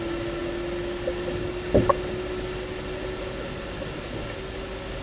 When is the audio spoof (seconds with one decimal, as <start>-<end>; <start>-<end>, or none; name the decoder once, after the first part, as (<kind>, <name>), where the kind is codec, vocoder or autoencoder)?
none

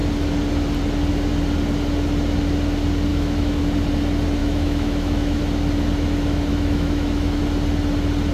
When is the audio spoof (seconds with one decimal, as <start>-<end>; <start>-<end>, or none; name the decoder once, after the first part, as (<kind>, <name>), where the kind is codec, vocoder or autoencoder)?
3.1-3.6 (autoencoder, DAC-VAE); 4.4-5.4; 6.5-7.4

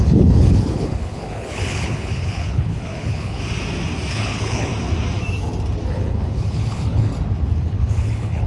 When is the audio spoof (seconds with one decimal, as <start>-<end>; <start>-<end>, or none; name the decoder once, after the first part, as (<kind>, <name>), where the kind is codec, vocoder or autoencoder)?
0.0-3.4 (codec, HILCodec); 4.1-4.7; 5.9-7.1; 7.6-8.5

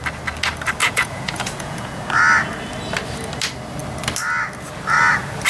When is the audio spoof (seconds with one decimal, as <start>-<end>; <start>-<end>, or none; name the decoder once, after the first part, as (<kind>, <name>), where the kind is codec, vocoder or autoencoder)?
0.8-2.0 (vocoder, Vocos)

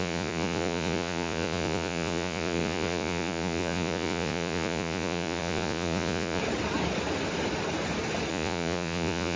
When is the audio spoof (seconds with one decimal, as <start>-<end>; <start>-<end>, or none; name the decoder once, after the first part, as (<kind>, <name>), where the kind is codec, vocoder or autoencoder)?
0.0-6.4 (vocoder, Vocos); 8.3-9.4

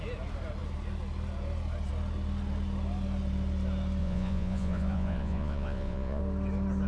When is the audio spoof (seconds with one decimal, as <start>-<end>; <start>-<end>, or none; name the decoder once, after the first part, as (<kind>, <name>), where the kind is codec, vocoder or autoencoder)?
4.0-6.2 (vocoder, Vocos)